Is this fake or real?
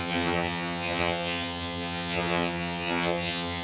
fake